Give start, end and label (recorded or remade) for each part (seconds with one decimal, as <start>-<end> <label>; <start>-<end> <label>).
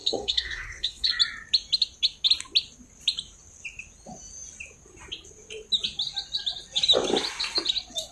0.0-1.1 remade; 1.1-8.1 recorded